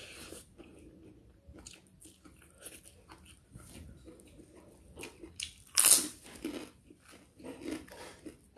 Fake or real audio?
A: real